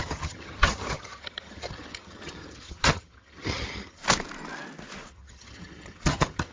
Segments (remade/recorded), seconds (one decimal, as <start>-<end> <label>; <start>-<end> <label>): 0.0-4.0 remade; 4.0-5.1 recorded; 5.1-6.5 remade